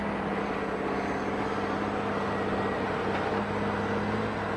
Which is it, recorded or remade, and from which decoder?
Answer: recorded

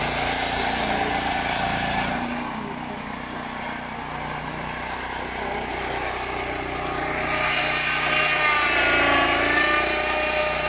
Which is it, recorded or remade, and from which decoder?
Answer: recorded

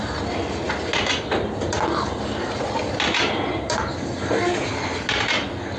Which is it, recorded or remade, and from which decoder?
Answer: recorded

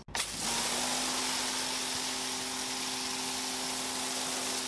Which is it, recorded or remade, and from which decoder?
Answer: recorded